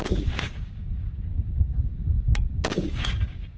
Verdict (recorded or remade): remade